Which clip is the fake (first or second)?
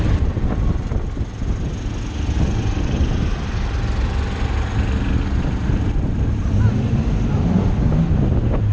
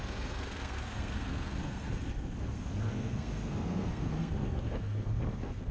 second